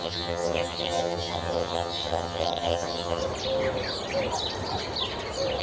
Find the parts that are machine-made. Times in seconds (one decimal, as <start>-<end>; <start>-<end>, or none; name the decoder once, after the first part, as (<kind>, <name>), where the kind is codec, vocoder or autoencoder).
0.0-3.2 (vocoder, HiFi-GAN)

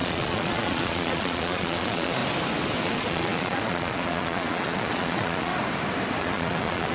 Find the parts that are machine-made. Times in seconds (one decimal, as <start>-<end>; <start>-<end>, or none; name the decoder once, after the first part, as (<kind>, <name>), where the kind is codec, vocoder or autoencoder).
0.0-2.2 (vocoder, Vocos); 2.8-5.5; 6.2-6.9

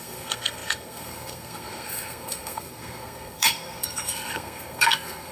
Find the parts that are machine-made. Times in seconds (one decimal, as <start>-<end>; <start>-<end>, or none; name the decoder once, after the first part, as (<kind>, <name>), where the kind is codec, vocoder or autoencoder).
0.0-5.3 (codec, SNAC)

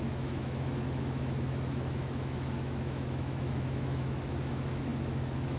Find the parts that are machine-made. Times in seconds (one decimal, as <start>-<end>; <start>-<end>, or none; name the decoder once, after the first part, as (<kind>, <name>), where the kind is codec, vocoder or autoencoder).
0.0-5.6 (autoencoder, DAC-VAE)

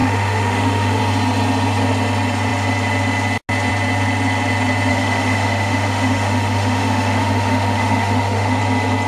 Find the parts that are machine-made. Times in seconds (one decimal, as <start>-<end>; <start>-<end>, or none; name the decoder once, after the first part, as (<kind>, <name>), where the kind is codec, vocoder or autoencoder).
0.0-1.0 (autoencoder, DAC-VAE); 4.9-8.6

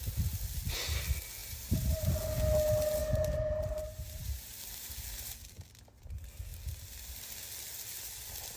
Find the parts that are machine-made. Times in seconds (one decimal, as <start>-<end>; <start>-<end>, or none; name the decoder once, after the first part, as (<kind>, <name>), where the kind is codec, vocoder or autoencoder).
1.4-2.1 (vocoder, BigVGAN v2); 3.0-4.9

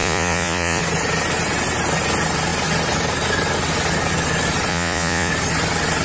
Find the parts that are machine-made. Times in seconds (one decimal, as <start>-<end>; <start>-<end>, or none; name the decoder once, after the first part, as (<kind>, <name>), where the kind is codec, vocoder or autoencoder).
0.0-0.8 (vocoder, Vocos); 4.7-5.3